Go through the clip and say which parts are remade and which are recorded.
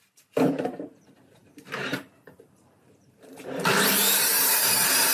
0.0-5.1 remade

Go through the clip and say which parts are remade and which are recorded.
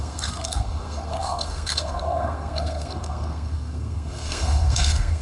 0.0-5.2 remade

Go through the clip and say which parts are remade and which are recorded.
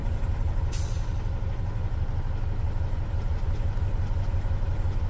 0.0-5.1 recorded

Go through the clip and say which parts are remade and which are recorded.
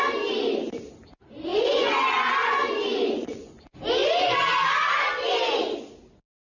0.0-1.5 recorded; 1.5-3.6 remade; 3.6-6.4 recorded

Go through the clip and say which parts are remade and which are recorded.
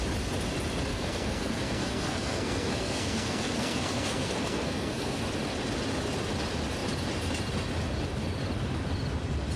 0.0-0.9 recorded; 0.9-5.2 remade; 5.2-9.6 recorded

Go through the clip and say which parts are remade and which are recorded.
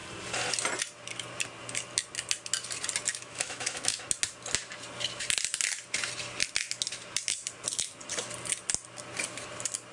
0.0-3.1 recorded; 3.1-4.0 remade; 4.0-9.9 recorded